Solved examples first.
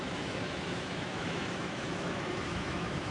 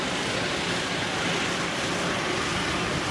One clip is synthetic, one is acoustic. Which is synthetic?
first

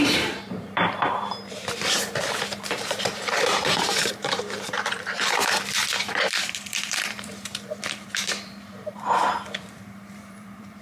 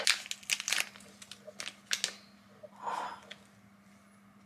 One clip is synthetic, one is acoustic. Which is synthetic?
first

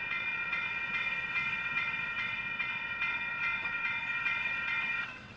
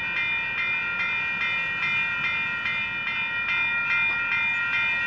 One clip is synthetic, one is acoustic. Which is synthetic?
first